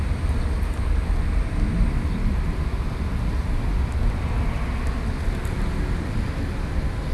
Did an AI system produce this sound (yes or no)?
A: no